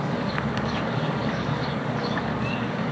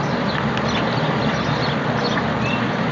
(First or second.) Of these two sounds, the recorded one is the second